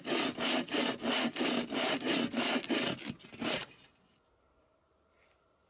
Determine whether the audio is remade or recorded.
recorded